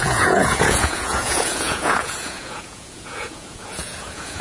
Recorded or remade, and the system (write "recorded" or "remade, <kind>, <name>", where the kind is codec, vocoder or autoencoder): remade, vocoder, Vocos